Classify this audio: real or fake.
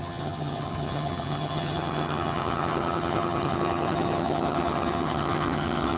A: fake